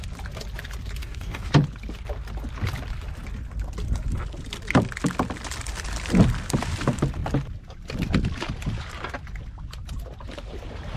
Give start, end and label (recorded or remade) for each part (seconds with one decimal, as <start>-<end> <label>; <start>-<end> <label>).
0.0-1.0 recorded; 1.0-1.5 remade; 1.5-11.0 recorded